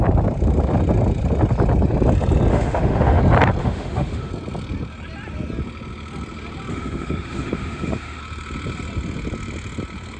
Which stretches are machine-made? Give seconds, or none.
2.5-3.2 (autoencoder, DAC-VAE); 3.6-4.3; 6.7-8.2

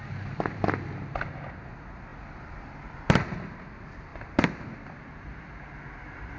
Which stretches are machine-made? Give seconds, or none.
2.1-3.0 (vocoder, BigVGAN v2); 4.1-5.0

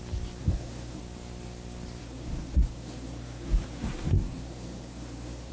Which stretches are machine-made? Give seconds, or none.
0.4-1.0 (codec, SNAC); 2.0-5.5

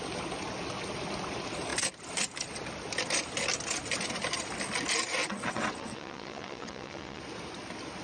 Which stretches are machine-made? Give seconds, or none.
5.2-7.2 (vocoder, WaveNeXt)

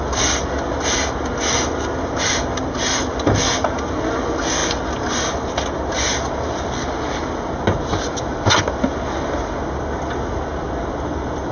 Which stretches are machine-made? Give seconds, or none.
none

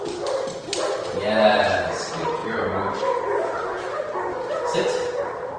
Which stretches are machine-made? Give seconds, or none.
none